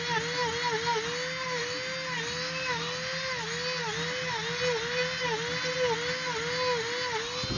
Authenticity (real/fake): real